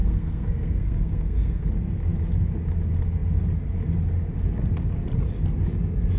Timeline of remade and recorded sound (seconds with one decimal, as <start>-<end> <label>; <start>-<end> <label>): 0.0-1.7 remade; 1.7-6.2 recorded